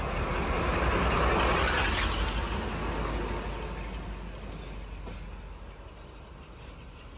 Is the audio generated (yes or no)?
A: no